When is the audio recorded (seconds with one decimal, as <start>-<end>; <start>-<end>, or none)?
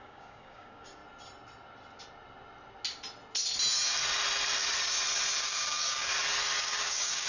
1.0-5.4; 6.1-6.6